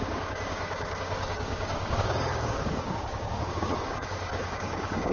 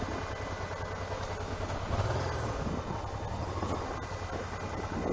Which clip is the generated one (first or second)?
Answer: first